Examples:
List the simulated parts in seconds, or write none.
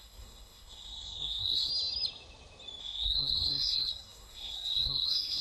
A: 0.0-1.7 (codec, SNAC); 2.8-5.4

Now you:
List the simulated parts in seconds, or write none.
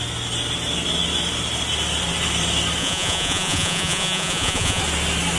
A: 2.8-4.8 (vocoder, Vocos)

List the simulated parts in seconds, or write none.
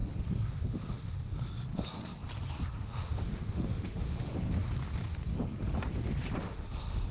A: 0.5-1.3 (autoencoder, DAC-VAE); 2.8-4.3; 6.4-7.1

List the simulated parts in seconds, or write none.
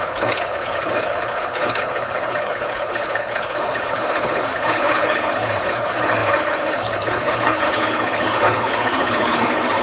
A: 0.0-9.8 (codec, HILCodec)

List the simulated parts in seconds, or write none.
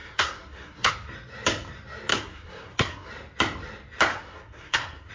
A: 0.0-0.9 (codec, SNAC); 2.1-3.1; 4.1-5.1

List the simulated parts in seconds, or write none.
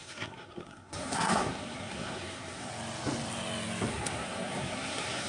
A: 0.0-2.7 (codec, SNAC); 3.9-5.3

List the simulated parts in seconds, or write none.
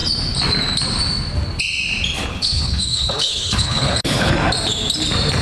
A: 2.3-4.3 (codec, HILCodec)